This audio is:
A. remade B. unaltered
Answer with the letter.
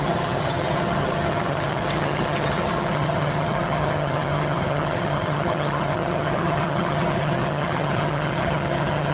A